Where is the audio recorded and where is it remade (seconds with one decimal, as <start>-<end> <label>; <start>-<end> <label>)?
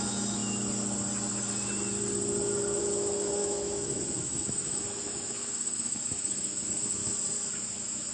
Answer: 0.0-0.4 remade; 0.4-2.8 recorded; 2.8-7.0 remade; 7.0-7.5 recorded; 7.5-8.1 remade